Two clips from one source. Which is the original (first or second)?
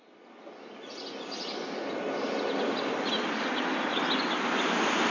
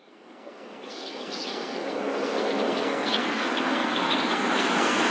first